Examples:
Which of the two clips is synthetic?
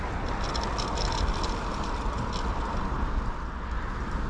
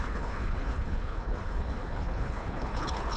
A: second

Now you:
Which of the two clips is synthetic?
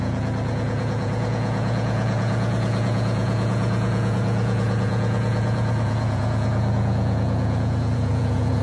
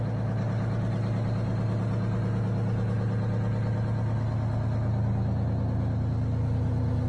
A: first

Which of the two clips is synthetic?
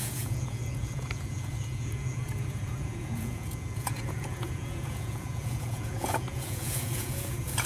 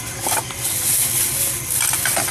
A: first